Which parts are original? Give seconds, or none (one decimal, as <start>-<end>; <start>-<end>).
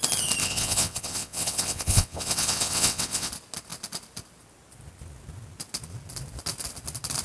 0.0-0.4; 3.3-7.2